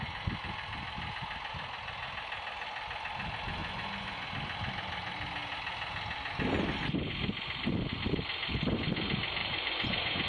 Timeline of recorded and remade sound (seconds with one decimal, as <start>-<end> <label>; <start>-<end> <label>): 0.0-3.6 recorded; 3.6-4.3 remade; 4.3-9.4 recorded; 9.4-10.3 remade